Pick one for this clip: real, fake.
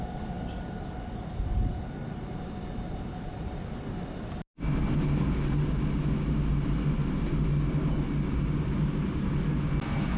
real